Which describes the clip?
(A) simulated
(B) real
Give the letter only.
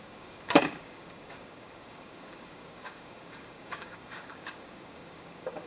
A